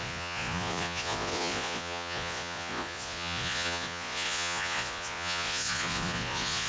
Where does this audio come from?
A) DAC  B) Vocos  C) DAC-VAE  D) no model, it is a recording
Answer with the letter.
B